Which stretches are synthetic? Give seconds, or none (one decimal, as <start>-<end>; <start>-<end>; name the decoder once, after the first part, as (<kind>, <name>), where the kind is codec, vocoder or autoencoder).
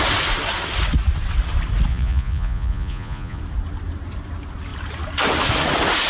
1.9-3.4 (vocoder, Vocos)